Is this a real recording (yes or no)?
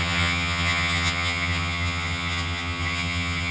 no